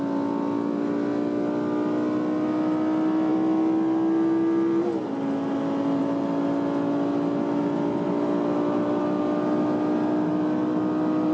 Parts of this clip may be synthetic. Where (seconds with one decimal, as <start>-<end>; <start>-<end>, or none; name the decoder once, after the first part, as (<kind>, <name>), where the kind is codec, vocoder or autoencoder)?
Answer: none